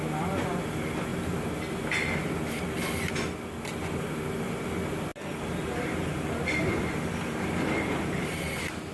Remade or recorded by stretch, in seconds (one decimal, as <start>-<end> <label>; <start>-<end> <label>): 0.0-8.9 recorded